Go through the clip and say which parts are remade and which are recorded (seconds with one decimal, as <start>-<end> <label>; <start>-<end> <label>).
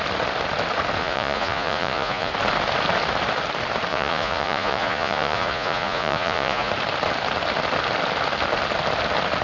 0.0-1.0 recorded; 1.0-2.3 remade; 2.3-3.9 recorded; 3.9-6.7 remade; 6.7-9.4 recorded